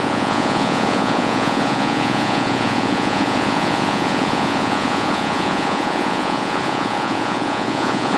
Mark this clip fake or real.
fake